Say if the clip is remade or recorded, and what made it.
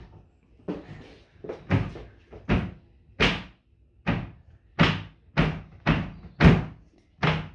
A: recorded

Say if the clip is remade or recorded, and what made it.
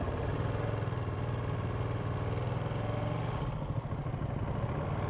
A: recorded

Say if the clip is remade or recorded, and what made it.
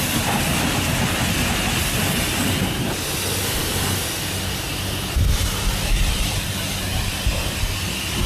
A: recorded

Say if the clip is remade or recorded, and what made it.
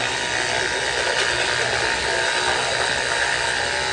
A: recorded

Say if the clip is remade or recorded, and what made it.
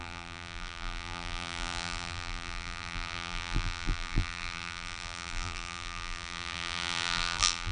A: remade, vocoder, BigVGAN v2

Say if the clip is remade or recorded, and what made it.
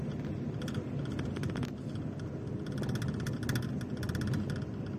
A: recorded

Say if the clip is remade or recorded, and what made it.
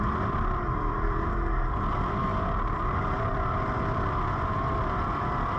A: remade, vocoder, BigVGAN v2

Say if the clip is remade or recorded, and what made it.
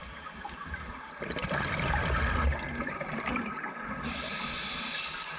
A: recorded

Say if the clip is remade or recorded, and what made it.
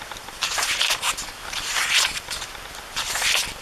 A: recorded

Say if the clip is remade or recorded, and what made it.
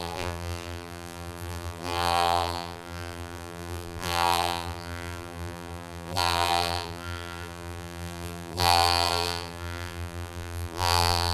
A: remade, vocoder, BigVGAN v2